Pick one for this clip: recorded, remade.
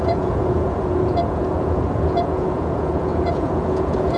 remade